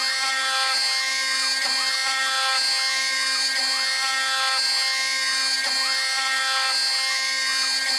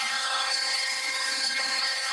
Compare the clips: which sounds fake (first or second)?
second